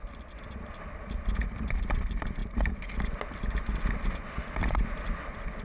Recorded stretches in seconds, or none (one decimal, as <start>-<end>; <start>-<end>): 0.0-5.6